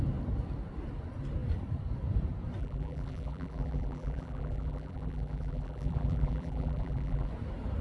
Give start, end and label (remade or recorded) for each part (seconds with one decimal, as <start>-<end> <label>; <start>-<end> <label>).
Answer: 0.0-2.6 recorded; 2.6-7.3 remade; 7.3-7.8 recorded